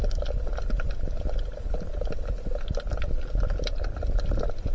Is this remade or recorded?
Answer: recorded